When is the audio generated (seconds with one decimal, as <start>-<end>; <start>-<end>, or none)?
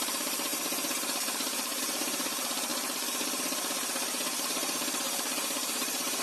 0.0-6.2